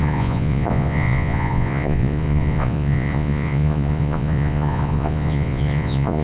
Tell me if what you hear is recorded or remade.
remade